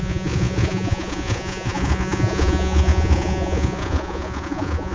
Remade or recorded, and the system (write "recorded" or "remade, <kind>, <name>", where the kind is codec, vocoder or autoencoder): remade, vocoder, Vocos